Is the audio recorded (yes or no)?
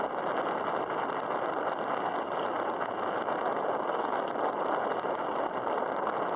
yes